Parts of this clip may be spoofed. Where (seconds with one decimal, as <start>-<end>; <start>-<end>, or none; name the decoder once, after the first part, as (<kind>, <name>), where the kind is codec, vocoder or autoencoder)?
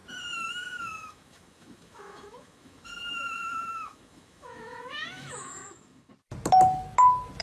0.5-6.1 (autoencoder, DAC-VAE)